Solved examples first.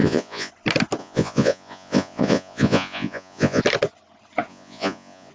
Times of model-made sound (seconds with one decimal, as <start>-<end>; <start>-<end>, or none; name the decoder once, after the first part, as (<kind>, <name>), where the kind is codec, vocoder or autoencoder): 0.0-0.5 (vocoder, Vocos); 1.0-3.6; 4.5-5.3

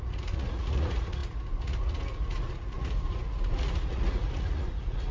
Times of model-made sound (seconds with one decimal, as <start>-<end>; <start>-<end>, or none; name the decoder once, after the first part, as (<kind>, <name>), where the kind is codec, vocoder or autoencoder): 0.0-5.1 (vocoder, Vocos)

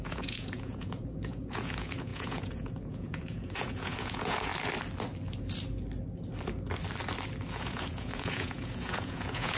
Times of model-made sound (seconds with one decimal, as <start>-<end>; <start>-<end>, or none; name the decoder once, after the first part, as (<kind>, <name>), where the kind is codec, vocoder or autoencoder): 0.0-4.5 (vocoder, Vocos); 7.5-9.6